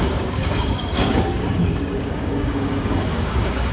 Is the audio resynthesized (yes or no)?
yes